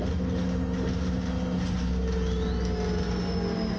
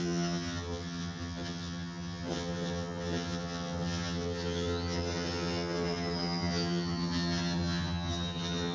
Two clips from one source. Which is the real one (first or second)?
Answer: first